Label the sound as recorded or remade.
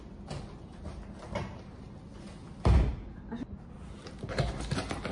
recorded